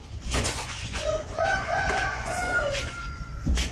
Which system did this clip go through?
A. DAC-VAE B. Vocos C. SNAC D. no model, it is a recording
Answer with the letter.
B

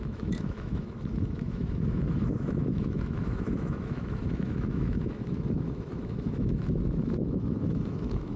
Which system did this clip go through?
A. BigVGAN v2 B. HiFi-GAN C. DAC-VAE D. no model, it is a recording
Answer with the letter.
C